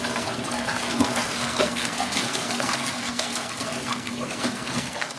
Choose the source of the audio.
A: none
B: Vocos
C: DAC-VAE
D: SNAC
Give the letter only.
D